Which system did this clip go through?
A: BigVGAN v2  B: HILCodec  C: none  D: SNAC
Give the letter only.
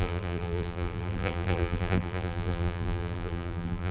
A